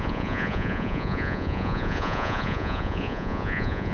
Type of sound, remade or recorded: remade